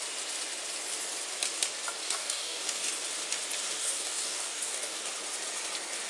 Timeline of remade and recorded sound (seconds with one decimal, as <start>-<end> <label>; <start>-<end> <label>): 0.0-2.0 recorded; 2.0-2.9 remade; 2.9-3.8 recorded; 3.8-5.0 remade; 5.0-6.1 recorded